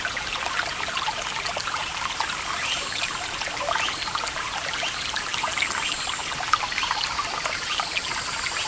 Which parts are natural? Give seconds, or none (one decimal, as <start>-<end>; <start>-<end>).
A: 0.0-8.7